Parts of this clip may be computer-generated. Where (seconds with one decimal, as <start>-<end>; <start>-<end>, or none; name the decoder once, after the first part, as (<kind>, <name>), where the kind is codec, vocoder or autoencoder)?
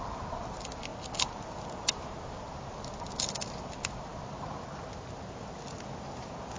none